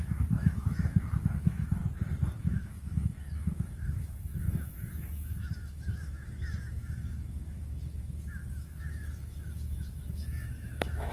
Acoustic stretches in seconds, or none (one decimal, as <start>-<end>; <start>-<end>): 1.8-2.4